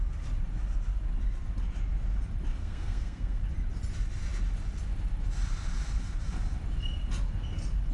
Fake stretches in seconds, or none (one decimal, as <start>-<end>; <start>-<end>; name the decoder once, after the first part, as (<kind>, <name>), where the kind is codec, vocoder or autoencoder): 2.6-3.4 (codec, SNAC)